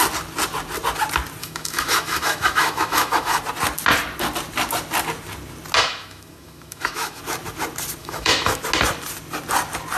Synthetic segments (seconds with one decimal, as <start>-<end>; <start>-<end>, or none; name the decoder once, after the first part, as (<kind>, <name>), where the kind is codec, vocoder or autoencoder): 1.4-3.4 (autoencoder, DAC-VAE); 5.8-7.2; 8.0-8.5